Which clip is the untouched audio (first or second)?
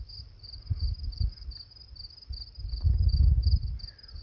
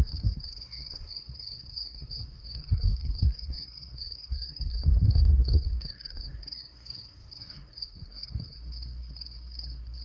first